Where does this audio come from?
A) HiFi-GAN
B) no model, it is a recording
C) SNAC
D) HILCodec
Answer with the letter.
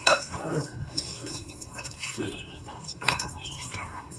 C